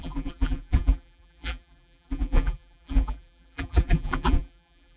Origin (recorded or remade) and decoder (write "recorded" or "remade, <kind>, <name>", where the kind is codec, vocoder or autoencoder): remade, vocoder, BigVGAN v2